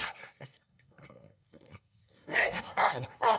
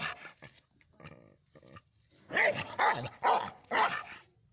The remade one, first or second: first